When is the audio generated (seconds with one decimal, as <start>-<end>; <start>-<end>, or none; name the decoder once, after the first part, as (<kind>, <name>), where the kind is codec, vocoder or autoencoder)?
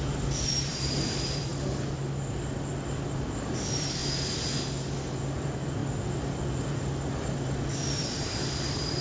0.0-1.5 (vocoder, BigVGAN v2); 2.9-4.0; 5.1-5.8; 6.5-9.0